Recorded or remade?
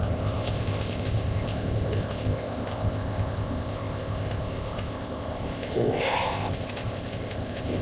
remade